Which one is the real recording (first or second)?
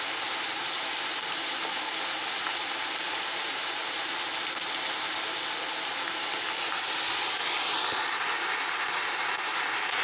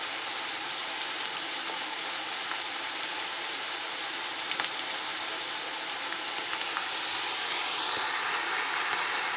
first